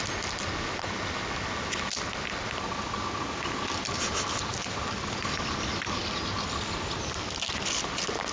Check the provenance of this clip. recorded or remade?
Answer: recorded